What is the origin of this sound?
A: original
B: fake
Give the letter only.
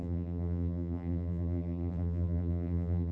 B